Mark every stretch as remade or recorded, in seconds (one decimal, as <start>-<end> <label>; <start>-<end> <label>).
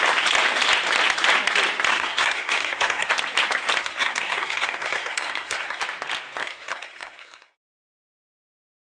0.0-1.9 recorded; 1.9-3.1 remade; 3.1-3.8 recorded; 3.8-5.8 remade; 5.8-6.4 recorded; 6.4-7.6 remade; 7.6-8.8 recorded